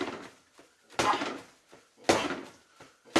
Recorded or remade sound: recorded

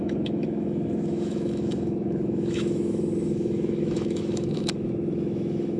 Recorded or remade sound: remade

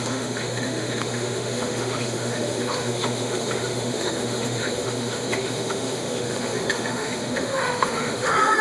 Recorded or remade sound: remade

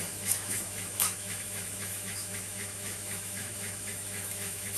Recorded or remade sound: remade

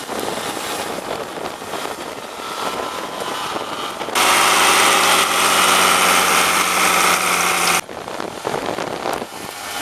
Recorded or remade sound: recorded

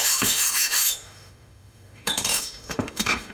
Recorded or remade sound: remade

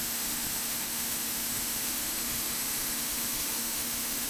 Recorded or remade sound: remade